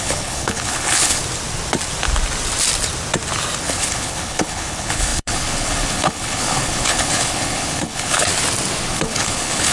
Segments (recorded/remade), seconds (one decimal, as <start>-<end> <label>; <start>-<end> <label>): 0.0-1.2 remade; 1.2-3.6 recorded; 3.6-8.3 remade; 8.3-8.9 recorded; 8.9-9.7 remade